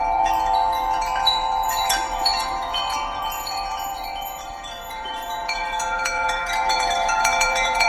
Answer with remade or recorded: remade